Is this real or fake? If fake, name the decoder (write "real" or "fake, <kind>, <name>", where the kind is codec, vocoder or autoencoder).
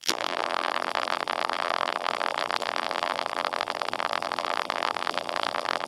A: fake, vocoder, BigVGAN v2